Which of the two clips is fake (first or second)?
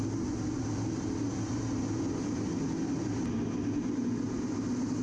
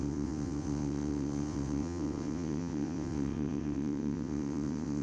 second